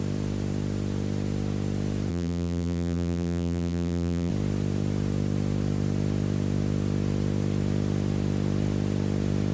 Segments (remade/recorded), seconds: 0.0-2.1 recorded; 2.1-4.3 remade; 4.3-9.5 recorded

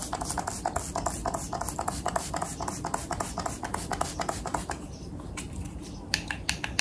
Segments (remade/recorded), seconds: 0.0-1.2 recorded; 1.2-2.3 remade; 2.3-6.8 recorded